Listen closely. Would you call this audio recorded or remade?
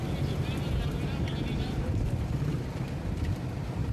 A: recorded